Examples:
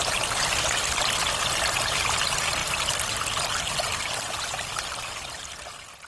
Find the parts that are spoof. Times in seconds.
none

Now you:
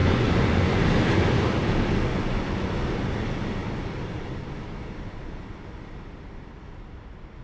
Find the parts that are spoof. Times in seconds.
0.0-0.8 (vocoder, Vocos); 2.1-2.7